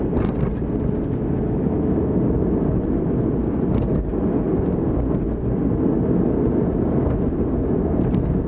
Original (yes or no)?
yes